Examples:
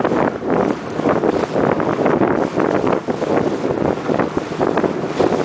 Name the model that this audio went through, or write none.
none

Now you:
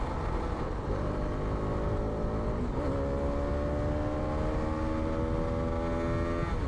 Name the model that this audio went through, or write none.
none